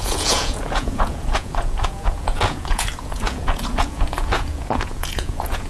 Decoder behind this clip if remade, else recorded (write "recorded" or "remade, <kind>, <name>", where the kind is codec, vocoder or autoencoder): remade, vocoder, Vocos